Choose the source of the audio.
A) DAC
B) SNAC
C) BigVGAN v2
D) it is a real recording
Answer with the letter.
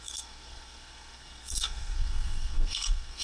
B